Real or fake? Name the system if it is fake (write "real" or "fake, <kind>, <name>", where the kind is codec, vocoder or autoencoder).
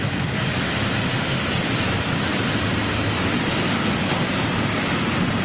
real